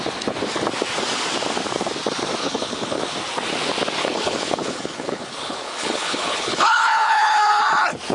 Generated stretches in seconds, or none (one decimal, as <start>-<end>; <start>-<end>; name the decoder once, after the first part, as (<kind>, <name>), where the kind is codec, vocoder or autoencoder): 2.4-3.0 (codec, HILCodec); 4.0-7.6

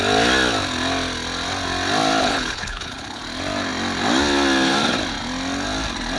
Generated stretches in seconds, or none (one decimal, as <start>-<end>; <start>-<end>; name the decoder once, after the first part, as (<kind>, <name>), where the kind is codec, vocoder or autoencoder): 2.2-3.2 (codec, HILCodec)

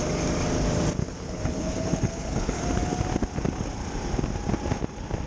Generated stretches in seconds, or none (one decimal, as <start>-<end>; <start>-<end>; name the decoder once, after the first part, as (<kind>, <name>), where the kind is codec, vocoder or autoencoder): 1.0-2.6 (codec, HILCodec)

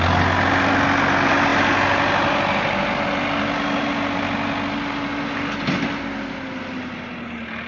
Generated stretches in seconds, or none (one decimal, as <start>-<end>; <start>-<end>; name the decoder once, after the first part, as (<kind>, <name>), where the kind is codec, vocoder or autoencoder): none

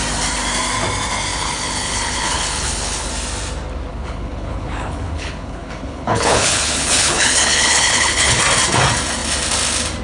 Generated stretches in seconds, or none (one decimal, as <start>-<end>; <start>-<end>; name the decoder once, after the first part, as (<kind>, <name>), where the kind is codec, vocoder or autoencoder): 1.3-3.1 (codec, HILCodec); 3.9-8.4

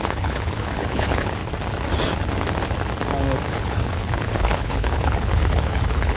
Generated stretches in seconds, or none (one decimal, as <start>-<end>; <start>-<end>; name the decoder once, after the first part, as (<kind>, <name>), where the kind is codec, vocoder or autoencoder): 0.0-1.4 (codec, HILCodec); 3.6-6.2

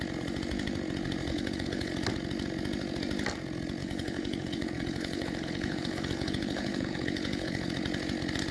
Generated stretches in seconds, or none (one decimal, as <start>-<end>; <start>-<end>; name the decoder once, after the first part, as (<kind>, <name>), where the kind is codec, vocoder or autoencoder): 1.3-1.9 (codec, HILCodec); 3.8-7.7